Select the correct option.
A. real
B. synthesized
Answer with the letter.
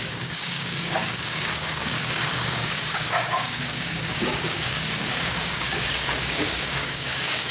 B